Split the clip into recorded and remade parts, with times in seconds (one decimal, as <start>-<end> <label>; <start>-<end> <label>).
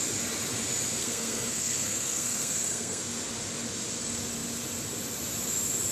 0.0-1.0 recorded; 1.0-3.0 remade; 3.0-5.9 recorded